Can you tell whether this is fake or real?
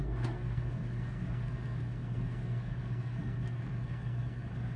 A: fake